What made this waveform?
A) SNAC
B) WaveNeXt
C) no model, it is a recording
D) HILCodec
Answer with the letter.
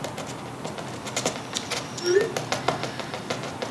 C